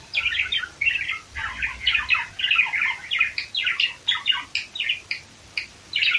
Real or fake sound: real